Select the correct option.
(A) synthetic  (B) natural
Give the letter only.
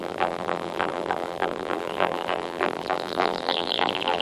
A